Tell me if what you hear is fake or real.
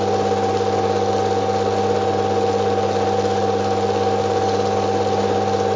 real